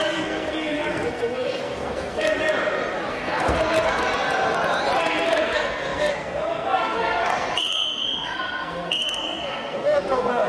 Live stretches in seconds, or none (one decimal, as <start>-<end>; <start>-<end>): 2.4-3.1; 4.1-5.0